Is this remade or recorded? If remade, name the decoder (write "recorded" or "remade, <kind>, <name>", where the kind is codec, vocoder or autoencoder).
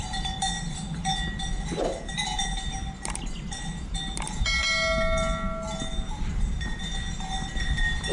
recorded